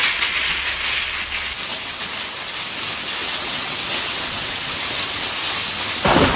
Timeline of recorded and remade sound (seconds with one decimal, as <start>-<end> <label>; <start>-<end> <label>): 0.0-0.5 remade; 0.5-3.2 recorded; 3.2-5.3 remade; 5.3-6.4 recorded